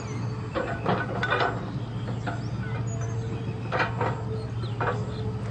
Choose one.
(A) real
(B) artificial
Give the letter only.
A